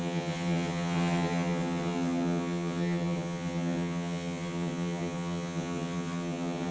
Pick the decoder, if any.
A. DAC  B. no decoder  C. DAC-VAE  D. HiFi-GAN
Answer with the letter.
D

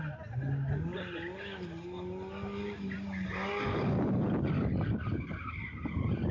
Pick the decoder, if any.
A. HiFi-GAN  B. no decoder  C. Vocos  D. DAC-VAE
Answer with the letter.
B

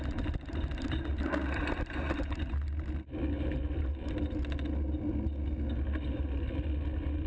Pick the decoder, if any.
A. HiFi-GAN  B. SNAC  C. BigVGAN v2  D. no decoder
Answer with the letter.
D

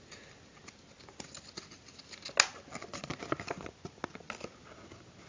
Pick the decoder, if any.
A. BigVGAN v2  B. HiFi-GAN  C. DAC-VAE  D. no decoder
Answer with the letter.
D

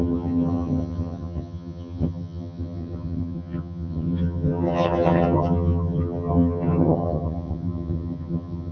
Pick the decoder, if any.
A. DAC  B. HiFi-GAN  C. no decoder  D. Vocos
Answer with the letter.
B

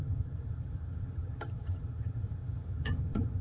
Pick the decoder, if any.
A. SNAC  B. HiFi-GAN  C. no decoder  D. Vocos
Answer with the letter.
B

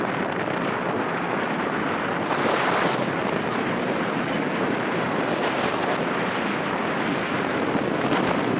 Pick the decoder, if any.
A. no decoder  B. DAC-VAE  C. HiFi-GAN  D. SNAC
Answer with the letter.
A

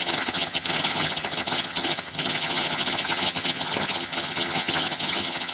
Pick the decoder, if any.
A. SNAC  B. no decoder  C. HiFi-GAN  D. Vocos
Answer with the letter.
C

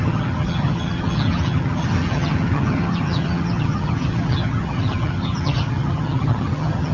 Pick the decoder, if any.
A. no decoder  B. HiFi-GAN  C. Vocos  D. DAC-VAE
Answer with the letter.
B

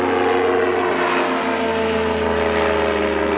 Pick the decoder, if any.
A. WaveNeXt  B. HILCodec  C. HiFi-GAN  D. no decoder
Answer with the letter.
D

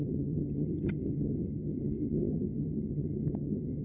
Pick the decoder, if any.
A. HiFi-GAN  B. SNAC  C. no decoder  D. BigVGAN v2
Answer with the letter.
A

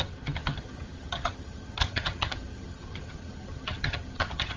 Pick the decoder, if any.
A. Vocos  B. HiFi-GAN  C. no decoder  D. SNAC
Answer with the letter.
B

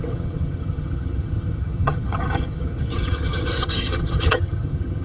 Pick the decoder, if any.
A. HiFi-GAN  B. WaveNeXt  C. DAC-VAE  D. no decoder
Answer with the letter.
A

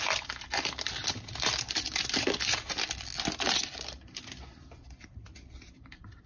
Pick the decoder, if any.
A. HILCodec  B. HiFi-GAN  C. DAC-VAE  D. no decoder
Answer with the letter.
D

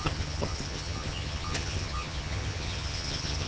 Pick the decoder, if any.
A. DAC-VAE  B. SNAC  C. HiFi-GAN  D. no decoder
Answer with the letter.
C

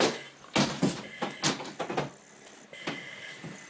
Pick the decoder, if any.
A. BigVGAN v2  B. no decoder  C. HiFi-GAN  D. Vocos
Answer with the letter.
B